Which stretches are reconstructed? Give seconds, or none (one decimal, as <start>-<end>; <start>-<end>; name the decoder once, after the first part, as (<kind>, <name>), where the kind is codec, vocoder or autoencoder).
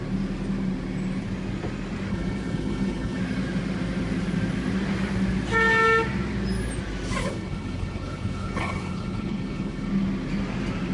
2.1-3.2 (codec, HILCodec); 7.2-9.9